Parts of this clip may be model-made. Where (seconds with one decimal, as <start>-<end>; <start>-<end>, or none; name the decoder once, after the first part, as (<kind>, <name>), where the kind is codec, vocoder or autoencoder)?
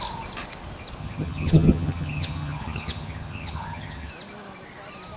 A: 1.0-4.1 (vocoder, HiFi-GAN)